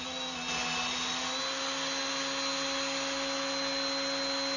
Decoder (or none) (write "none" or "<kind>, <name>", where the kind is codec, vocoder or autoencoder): none